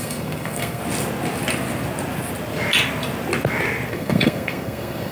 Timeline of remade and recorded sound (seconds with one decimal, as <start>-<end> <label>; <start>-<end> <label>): 0.0-0.8 remade; 0.8-3.9 recorded; 3.9-5.1 remade